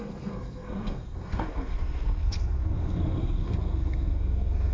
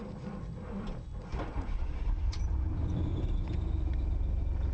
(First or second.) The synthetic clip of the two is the first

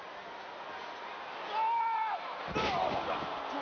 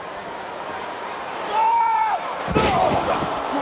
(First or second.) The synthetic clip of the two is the second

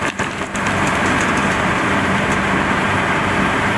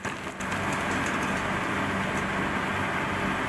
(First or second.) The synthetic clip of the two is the first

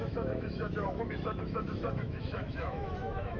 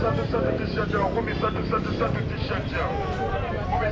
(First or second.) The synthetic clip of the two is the first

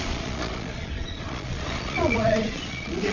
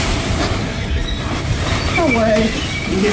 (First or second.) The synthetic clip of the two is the first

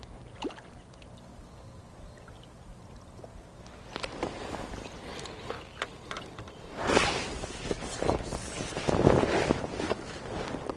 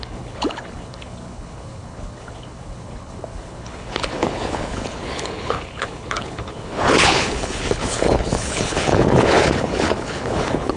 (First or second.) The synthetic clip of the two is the second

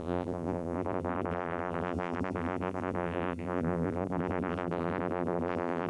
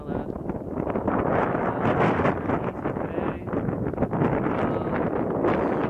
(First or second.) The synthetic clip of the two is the first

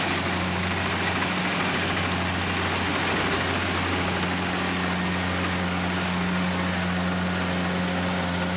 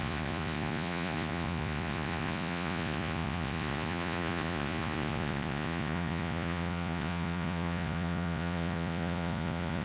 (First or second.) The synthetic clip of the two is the second